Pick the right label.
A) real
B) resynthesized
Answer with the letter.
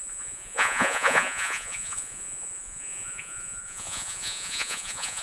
B